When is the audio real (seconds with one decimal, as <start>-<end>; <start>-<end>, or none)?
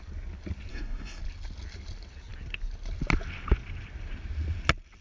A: 0.0-0.7; 1.2-5.0